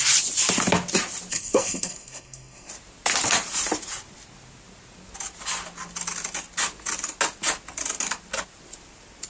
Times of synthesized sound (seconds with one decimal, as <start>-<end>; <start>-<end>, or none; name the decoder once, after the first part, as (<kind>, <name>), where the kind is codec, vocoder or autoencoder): 1.3-2.7 (codec, SNAC)